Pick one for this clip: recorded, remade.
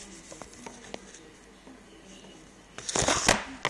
recorded